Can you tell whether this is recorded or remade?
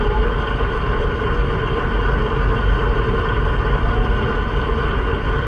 recorded